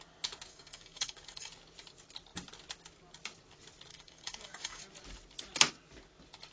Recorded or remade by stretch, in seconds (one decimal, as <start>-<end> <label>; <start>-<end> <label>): 0.0-0.5 recorded; 0.5-1.5 remade; 1.5-3.9 recorded; 3.9-4.8 remade; 4.8-6.5 recorded